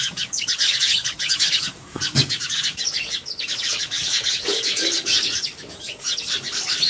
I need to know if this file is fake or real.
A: fake